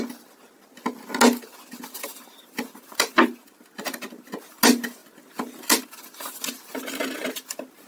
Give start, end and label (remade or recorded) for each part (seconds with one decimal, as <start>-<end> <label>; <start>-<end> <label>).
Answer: 0.0-7.9 recorded